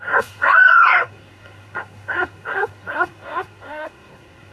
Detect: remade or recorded remade